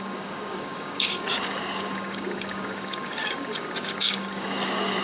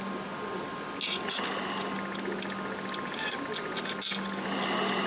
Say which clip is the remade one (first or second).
first